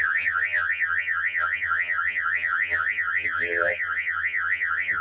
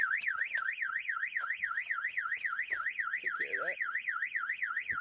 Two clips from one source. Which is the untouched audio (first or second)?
second